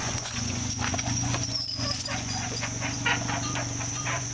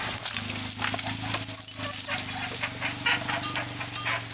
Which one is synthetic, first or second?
first